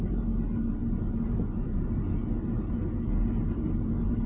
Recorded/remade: recorded